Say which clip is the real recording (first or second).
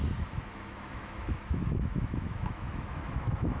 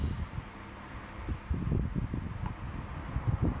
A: second